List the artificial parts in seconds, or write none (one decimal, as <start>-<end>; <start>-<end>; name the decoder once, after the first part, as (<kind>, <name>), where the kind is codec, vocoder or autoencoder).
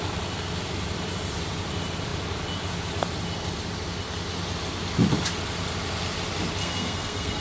6.6-7.4 (codec, SNAC)